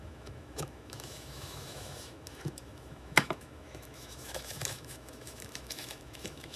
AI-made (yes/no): yes